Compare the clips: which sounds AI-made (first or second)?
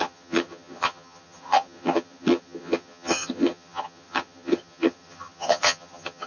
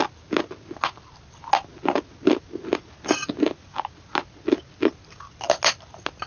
first